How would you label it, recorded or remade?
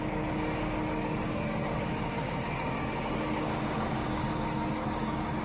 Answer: remade